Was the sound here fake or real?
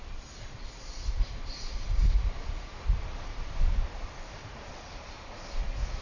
real